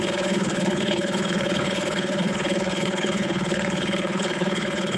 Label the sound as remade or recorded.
remade